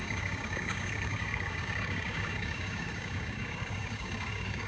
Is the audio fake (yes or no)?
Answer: yes